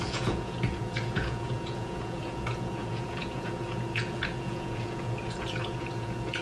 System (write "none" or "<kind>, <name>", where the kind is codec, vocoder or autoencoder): vocoder, Vocos